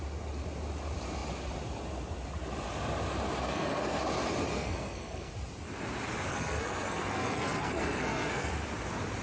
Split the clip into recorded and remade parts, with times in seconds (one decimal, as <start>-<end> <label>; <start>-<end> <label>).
0.0-3.4 recorded; 3.4-4.0 remade; 4.0-4.5 recorded; 4.5-5.3 remade; 5.3-6.3 recorded; 6.3-8.5 remade; 8.5-9.2 recorded